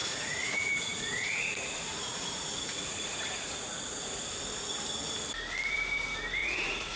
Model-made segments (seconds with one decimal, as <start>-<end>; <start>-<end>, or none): 0.0-4.2; 6.4-7.0